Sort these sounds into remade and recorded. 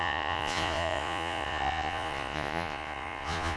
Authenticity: remade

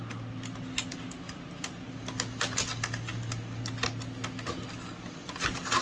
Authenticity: recorded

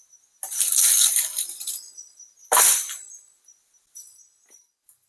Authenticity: recorded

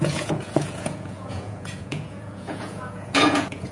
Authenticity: remade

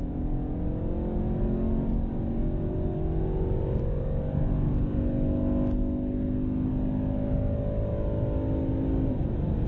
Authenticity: recorded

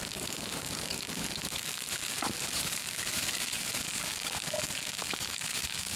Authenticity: remade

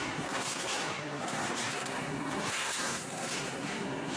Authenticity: remade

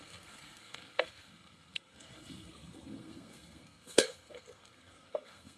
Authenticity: remade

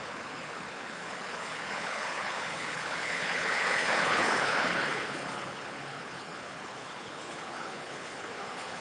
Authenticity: remade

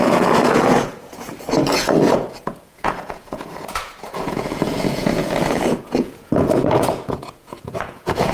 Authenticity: remade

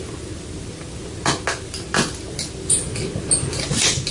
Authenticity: recorded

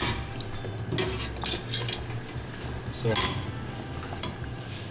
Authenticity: recorded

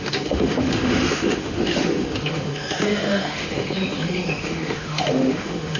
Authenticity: remade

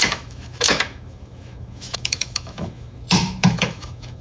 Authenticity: remade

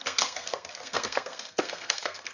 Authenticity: remade